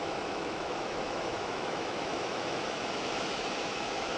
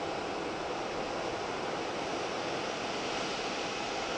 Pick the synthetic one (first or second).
first